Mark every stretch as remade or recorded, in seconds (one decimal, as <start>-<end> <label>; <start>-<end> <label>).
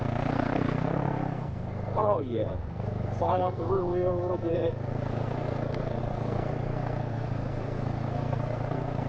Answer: 0.0-9.1 remade